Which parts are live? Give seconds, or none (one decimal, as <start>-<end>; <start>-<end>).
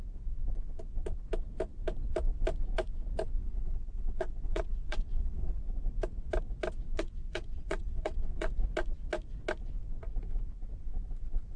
0.0-3.4; 5.6-6.9; 8.5-11.6